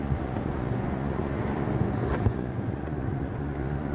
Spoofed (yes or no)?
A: yes